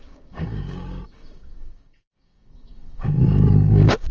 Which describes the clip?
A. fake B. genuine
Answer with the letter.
A